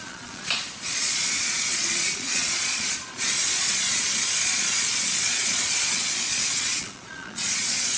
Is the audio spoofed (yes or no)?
yes